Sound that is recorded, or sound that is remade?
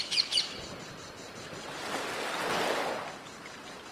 recorded